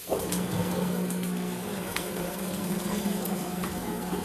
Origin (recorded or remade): remade